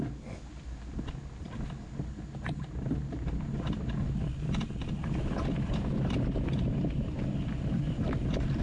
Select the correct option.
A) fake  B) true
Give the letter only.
B